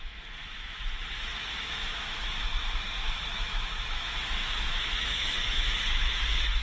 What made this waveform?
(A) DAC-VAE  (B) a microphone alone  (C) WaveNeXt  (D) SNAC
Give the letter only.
A